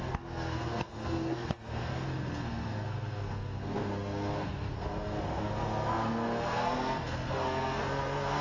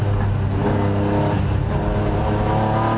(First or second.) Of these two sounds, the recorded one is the second